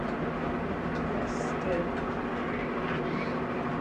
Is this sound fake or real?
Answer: real